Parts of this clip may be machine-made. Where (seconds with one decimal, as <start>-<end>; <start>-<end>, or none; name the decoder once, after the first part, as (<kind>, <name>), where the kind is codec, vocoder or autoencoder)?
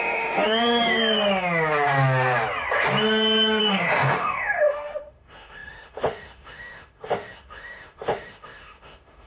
0.0-1.0 (autoencoder, DAC-VAE); 3.6-9.3